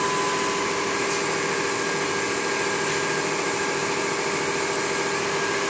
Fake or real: real